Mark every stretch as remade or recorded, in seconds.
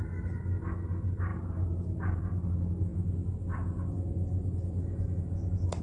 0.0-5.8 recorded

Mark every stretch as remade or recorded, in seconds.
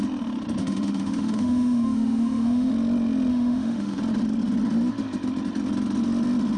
0.0-0.6 recorded; 0.6-2.7 remade; 2.7-3.3 recorded; 3.3-4.0 remade; 4.0-6.6 recorded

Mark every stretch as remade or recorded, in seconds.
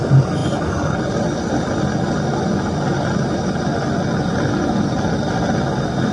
0.0-6.1 recorded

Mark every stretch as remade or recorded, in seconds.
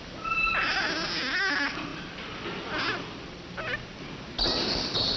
0.0-5.2 recorded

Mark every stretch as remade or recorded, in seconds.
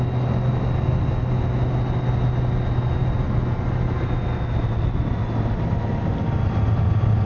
0.0-7.3 recorded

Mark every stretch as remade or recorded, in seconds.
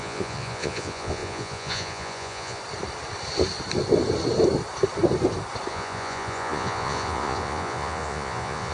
0.0-2.6 remade; 2.6-5.7 recorded; 5.7-8.7 remade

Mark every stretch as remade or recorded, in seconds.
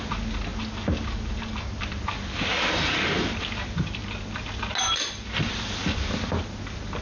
0.0-7.0 recorded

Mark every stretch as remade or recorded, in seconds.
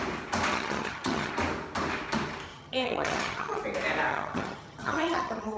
0.0-0.5 recorded; 0.5-1.3 remade; 1.3-2.5 recorded; 2.5-3.6 remade; 3.6-4.1 recorded; 4.1-5.6 remade